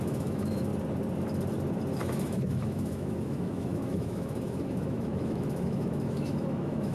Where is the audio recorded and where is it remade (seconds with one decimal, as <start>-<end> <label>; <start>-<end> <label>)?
0.0-0.7 remade; 0.7-2.0 recorded; 2.0-6.9 remade

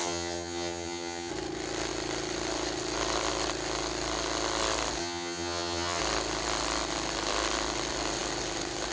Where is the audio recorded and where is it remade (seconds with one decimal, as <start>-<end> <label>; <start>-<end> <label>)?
0.0-1.3 remade; 1.3-5.0 recorded; 5.0-6.0 remade; 6.0-8.9 recorded

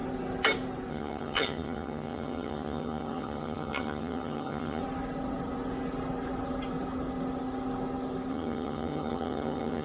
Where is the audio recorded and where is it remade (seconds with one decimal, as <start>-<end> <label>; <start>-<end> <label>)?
0.0-0.9 recorded; 0.9-4.8 remade; 4.8-8.3 recorded; 8.3-9.8 remade